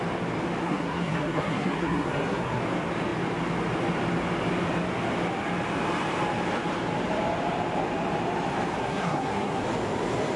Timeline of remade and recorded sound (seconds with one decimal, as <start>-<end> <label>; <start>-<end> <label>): 0.0-0.6 recorded; 0.6-2.6 remade; 2.6-8.8 recorded; 8.8-9.6 remade; 9.6-10.4 recorded